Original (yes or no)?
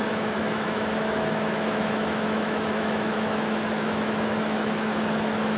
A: no